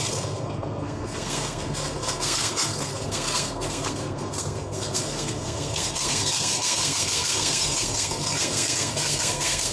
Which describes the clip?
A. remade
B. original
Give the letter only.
A